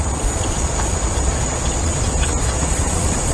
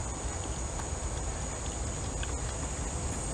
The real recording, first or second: second